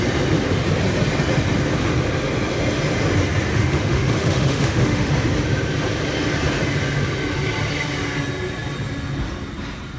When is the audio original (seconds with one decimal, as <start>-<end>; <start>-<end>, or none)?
0.0-3.5; 5.1-10.0